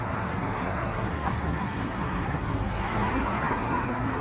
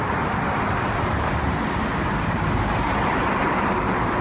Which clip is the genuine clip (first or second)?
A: second